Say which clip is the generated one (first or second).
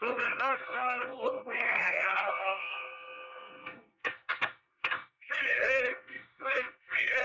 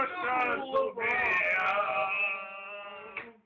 first